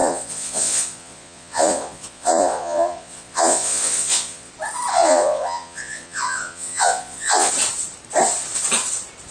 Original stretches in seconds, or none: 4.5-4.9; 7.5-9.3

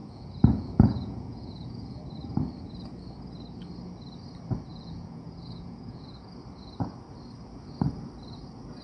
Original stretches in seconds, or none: 2.0-4.7; 6.3-8.8

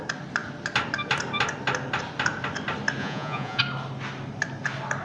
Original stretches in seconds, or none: 0.0-3.0; 3.6-5.0

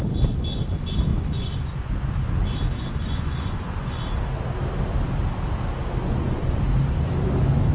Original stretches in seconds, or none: 0.0-1.1; 1.9-3.0; 4.0-6.0; 6.6-7.7

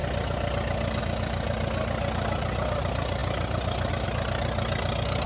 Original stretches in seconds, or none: 0.0-5.3

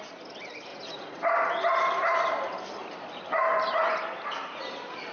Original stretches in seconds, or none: 0.0-0.7; 1.2-5.1

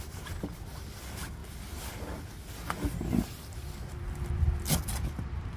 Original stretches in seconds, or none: 0.0-5.6

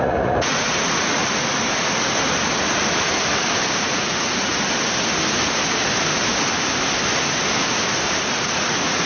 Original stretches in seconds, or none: 1.2-3.8; 4.5-8.3